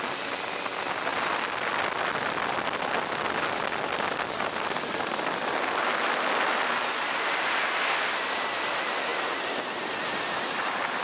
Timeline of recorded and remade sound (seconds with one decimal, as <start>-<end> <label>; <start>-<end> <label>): 0.0-11.0 recorded